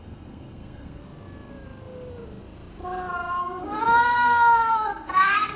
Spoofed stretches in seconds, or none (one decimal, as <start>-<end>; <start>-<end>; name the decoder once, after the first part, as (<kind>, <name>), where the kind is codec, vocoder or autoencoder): 0.0-1.0 (codec, SNAC); 3.4-5.6